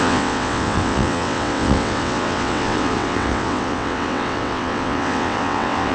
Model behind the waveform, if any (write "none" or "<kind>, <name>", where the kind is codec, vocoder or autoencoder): vocoder, WaveNeXt